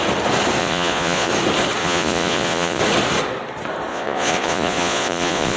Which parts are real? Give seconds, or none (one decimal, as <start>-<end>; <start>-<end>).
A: 0.0-0.6; 1.3-1.8; 2.8-3.9